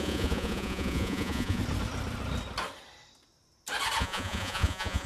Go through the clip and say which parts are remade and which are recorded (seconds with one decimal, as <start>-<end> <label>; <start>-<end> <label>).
0.0-1.6 remade; 1.6-4.0 recorded; 4.0-5.1 remade

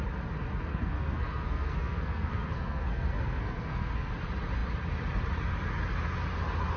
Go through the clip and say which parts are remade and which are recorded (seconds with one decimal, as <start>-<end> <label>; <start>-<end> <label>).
0.0-0.7 recorded; 0.7-4.1 remade; 4.1-6.8 recorded

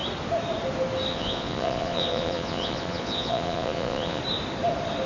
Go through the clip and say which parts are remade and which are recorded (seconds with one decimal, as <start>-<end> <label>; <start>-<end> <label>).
0.0-1.1 recorded; 1.1-4.2 remade; 4.2-5.1 recorded

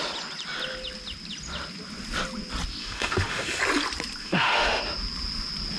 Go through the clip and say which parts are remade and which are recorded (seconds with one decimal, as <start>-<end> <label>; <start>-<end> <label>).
0.0-2.8 recorded; 2.8-3.6 remade; 3.6-4.2 recorded; 4.2-4.8 remade; 4.8-5.8 recorded